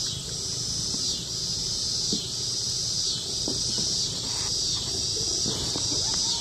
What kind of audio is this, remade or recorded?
remade